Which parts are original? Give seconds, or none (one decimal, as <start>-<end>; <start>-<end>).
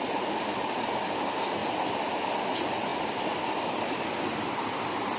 1.6-2.3